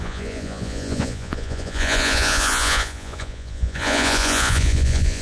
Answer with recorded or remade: remade